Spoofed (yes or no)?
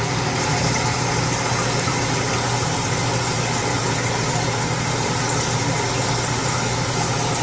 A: no